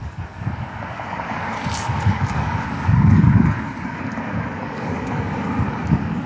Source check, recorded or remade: remade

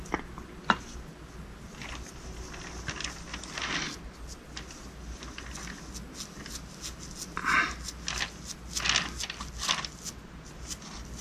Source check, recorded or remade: recorded